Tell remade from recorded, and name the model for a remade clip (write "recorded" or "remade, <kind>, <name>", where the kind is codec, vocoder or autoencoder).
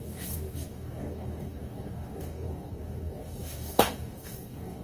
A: remade, codec, DAC